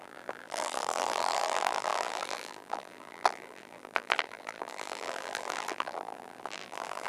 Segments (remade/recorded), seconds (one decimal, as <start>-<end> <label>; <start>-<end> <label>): 0.0-7.1 remade